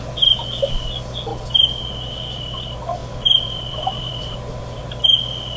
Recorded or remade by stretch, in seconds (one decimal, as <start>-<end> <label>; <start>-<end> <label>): 0.0-1.3 recorded; 1.3-1.9 remade; 1.9-3.0 recorded; 3.0-4.8 remade; 4.8-5.6 recorded